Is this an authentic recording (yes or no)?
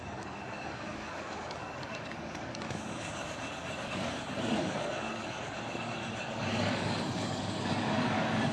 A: no